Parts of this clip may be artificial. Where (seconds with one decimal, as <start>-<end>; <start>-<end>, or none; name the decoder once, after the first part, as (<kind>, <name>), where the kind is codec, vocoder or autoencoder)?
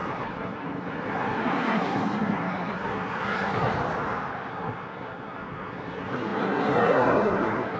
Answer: 0.0-3.7 (codec, SNAC); 4.5-7.8